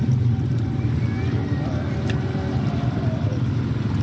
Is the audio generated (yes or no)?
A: no